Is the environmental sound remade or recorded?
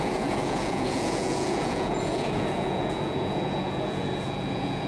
remade